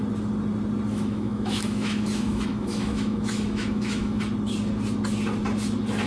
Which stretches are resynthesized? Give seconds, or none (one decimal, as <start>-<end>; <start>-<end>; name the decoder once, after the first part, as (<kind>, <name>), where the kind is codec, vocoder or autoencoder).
0.9-4.2 (autoencoder, DAC-VAE)